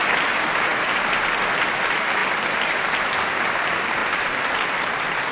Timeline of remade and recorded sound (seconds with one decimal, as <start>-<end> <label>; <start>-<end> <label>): 0.0-4.0 recorded; 4.0-4.7 remade; 4.7-5.3 recorded